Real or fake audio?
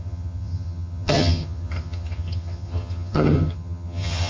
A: fake